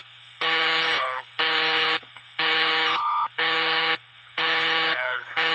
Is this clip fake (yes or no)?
yes